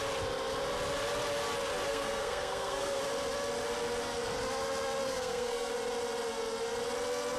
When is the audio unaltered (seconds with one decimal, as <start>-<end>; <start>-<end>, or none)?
0.0-1.9; 3.0-5.0; 5.7-7.4